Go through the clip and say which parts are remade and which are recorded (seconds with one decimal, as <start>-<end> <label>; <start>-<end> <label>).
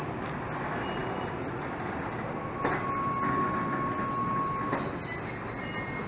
0.0-6.1 recorded